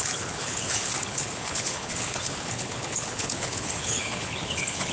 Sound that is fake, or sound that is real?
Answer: fake